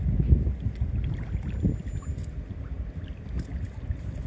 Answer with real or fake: real